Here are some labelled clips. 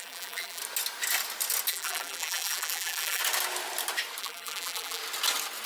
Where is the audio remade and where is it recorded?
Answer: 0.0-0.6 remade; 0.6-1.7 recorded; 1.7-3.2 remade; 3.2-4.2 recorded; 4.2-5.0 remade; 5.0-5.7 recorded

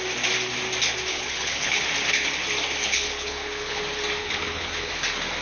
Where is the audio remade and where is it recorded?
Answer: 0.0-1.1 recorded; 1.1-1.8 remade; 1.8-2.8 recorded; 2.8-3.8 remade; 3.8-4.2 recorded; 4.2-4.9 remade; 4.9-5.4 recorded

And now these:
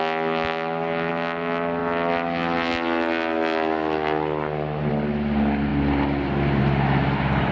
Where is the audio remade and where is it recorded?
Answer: 0.0-7.5 recorded

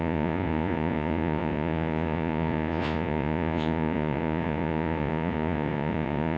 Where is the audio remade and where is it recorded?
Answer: 0.0-6.4 remade